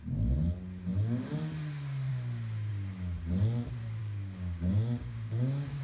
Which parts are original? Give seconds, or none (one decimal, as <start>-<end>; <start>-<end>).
0.0-4.0